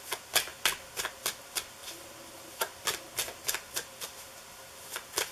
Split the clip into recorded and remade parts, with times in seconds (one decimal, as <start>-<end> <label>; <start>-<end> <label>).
0.0-5.3 recorded